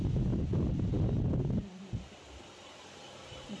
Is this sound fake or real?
real